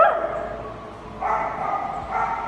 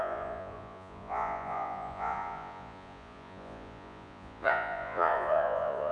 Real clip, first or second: first